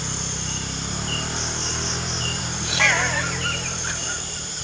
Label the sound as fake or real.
fake